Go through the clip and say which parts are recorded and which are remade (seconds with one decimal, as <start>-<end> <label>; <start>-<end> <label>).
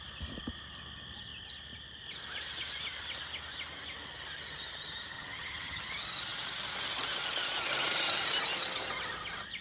0.0-5.1 recorded; 5.1-5.8 remade; 5.8-9.6 recorded